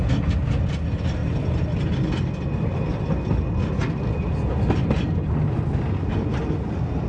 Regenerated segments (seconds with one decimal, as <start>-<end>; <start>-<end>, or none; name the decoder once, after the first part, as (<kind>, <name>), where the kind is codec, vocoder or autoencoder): none